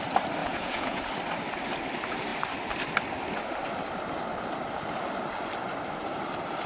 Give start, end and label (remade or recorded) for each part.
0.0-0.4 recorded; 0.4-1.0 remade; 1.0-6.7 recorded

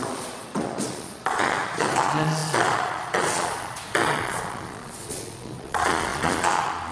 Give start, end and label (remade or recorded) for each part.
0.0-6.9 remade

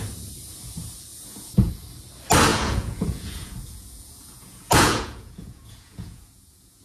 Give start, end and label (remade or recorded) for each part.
0.0-1.1 recorded; 1.1-1.7 remade; 1.7-2.5 recorded; 2.5-6.8 remade